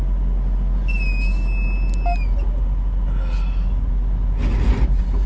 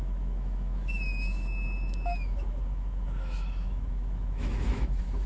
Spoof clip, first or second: second